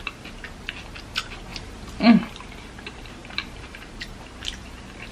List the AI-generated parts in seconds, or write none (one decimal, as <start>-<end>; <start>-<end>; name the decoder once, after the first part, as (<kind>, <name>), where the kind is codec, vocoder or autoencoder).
3.2-3.9 (vocoder, BigVGAN v2)